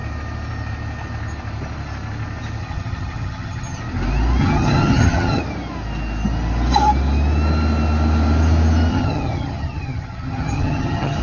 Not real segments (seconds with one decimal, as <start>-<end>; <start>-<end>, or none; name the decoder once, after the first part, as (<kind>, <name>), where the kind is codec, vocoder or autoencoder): 2.6-3.8 (vocoder, HiFi-GAN); 4.4-5.4; 8.9-11.2